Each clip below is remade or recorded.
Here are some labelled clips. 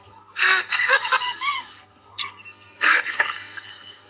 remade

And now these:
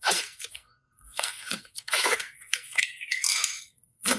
remade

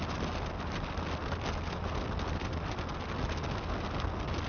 recorded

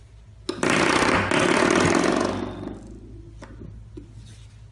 recorded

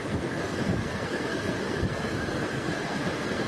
remade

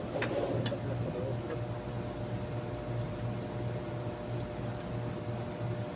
recorded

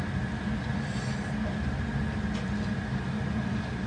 recorded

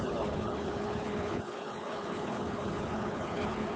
remade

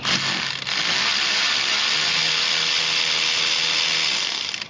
recorded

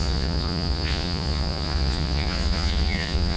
remade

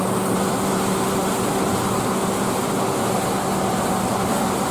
recorded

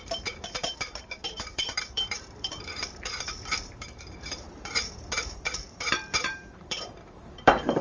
remade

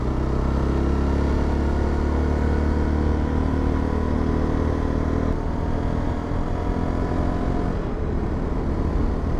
recorded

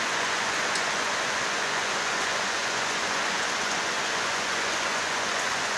remade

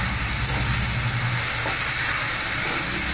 recorded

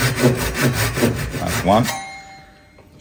recorded